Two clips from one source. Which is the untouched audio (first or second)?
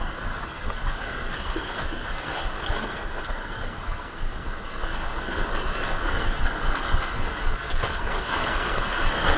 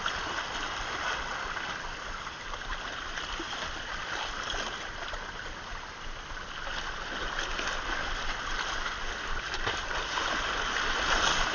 second